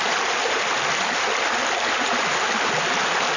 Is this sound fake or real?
real